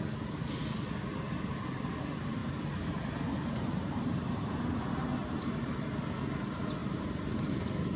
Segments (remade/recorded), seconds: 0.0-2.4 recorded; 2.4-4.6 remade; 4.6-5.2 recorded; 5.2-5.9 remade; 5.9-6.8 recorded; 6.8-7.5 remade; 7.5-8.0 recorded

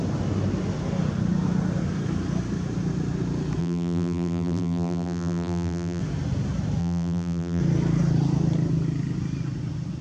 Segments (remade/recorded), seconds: 0.0-3.6 recorded; 3.6-6.0 remade; 6.0-6.8 recorded; 6.8-7.6 remade; 7.6-10.0 recorded

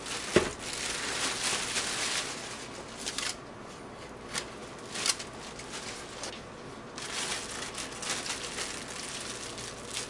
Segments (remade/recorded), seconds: 0.0-10.1 recorded

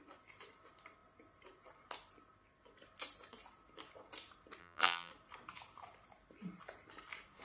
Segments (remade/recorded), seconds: 0.0-4.6 recorded; 4.6-5.1 remade; 5.1-7.4 recorded

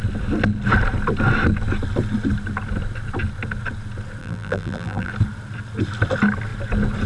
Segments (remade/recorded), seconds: 0.0-4.2 recorded; 4.2-5.1 remade; 5.1-7.1 recorded

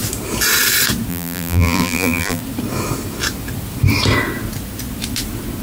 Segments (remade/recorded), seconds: 0.0-1.1 recorded; 1.1-2.4 remade; 2.4-5.6 recorded

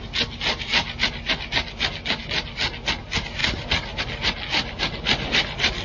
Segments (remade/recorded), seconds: 0.0-3.4 recorded; 3.4-4.0 remade; 4.0-5.8 recorded